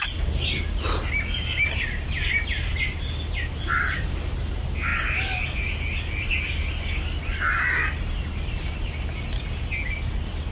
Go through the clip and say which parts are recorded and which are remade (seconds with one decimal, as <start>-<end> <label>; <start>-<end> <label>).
0.0-10.5 recorded